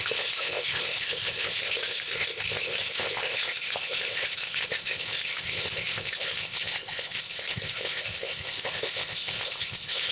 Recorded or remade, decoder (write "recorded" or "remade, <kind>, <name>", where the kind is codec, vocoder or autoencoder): remade, codec, ZipCodec